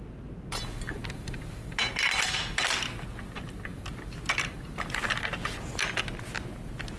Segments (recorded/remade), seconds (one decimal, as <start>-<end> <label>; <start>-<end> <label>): 0.0-7.0 recorded